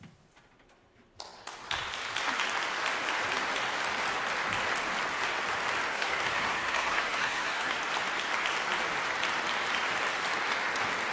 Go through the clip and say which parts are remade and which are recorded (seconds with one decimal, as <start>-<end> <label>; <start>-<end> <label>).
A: 0.0-5.9 recorded; 5.9-7.8 remade; 7.8-11.1 recorded